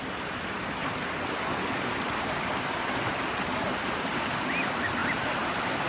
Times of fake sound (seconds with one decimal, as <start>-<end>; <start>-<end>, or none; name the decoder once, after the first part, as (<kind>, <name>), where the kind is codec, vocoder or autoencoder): none